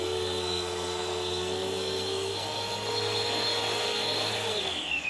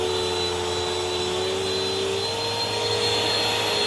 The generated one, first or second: first